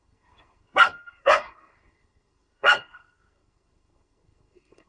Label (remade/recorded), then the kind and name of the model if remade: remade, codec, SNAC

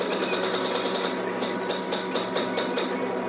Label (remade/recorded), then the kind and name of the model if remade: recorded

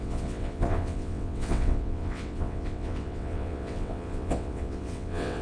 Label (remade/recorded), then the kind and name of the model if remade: remade, vocoder, WaveNeXt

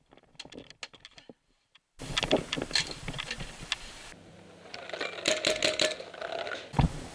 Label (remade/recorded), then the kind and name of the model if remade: recorded